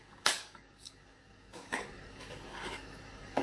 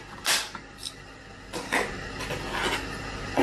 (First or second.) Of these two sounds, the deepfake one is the first